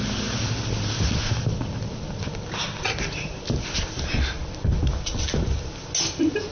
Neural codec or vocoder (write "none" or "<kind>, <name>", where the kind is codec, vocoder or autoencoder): none